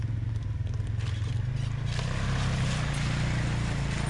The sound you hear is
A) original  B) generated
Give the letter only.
A